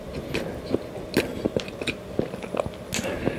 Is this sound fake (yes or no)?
no